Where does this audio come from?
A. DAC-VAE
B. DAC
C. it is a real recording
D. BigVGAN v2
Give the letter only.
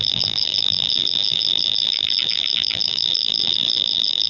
D